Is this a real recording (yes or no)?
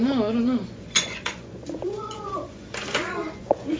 no